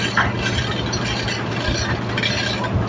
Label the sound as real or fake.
real